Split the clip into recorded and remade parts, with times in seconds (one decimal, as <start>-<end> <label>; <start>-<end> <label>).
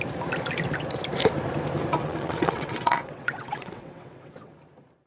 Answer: 0.0-2.0 recorded; 2.0-4.5 remade; 4.5-5.1 recorded